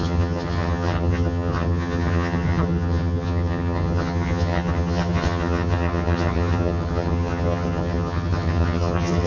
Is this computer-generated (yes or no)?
yes